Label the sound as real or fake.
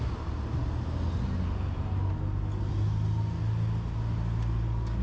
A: real